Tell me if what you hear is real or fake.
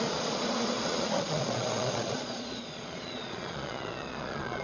fake